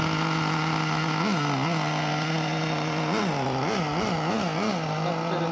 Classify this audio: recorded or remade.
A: recorded